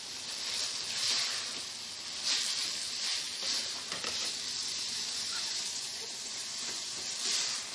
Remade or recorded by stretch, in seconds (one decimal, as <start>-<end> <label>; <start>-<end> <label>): 0.0-4.6 recorded; 4.6-7.0 remade; 7.0-7.7 recorded

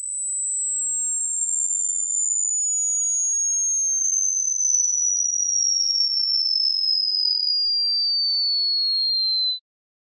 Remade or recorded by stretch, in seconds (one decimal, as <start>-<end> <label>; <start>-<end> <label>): 0.0-1.2 recorded; 1.2-2.5 remade; 2.5-4.0 recorded; 4.0-7.5 remade; 7.5-10.1 recorded